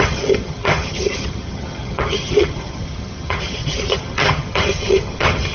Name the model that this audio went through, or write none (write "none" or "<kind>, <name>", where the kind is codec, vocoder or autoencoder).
vocoder, HiFi-GAN